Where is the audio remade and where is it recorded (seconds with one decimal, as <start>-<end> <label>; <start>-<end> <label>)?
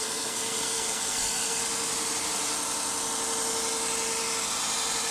0.0-1.6 remade; 1.6-5.1 recorded